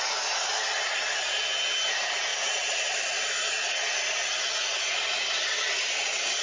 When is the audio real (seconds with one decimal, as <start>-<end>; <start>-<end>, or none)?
0.0-6.4